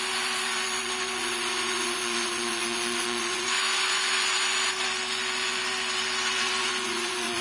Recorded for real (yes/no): no